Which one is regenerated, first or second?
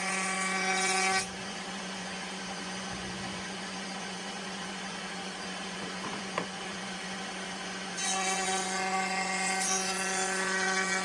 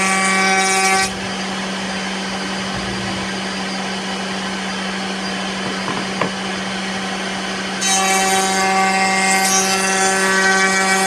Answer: first